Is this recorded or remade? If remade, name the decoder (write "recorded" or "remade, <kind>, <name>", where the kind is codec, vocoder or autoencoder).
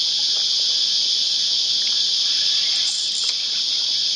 recorded